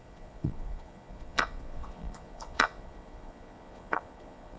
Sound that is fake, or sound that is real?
fake